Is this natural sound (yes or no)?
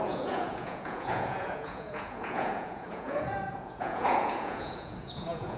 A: no